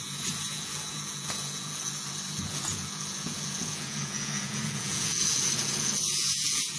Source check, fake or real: fake